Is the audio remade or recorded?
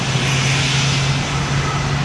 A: recorded